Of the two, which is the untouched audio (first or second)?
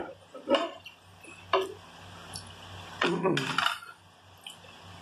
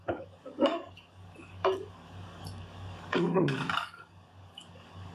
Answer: first